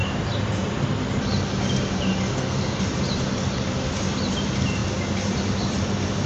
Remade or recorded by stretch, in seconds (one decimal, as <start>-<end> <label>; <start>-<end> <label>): 0.0-2.3 recorded; 2.3-2.8 remade; 2.8-6.3 recorded